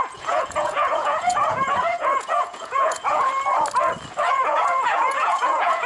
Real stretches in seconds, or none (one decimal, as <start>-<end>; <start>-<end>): 3.3-4.3